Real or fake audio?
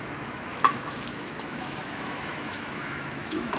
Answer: fake